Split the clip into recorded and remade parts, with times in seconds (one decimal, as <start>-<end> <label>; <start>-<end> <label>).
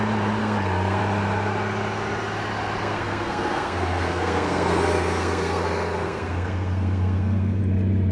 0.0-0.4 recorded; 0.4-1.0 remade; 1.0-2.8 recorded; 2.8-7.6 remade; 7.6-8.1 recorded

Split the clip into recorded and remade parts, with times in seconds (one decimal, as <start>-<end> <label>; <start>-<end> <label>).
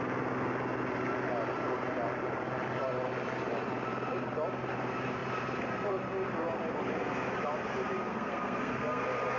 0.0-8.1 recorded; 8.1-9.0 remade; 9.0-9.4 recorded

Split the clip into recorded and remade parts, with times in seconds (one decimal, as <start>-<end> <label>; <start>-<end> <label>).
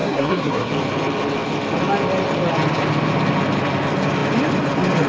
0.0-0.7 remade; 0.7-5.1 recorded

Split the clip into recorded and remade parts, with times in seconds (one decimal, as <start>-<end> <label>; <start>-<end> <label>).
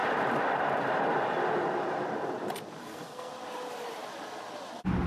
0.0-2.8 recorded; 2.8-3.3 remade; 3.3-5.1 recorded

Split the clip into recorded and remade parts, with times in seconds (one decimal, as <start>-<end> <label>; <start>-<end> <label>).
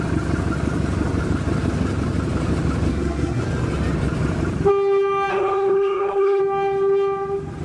0.0-2.9 recorded; 2.9-3.4 remade; 3.4-5.3 recorded; 5.3-6.4 remade; 6.4-7.6 recorded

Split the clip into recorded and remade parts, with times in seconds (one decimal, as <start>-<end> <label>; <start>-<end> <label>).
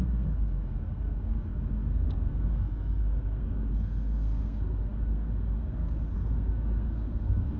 0.0-7.6 remade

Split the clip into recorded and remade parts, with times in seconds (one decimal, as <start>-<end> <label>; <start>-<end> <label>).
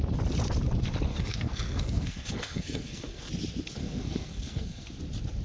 0.0-1.1 recorded; 1.1-3.3 remade; 3.3-3.8 recorded; 3.8-4.9 remade; 4.9-5.4 recorded